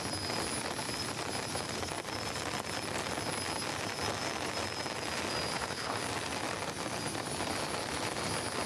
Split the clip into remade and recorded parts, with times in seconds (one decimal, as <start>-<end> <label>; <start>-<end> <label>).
0.0-5.5 recorded; 5.5-6.0 remade; 6.0-8.7 recorded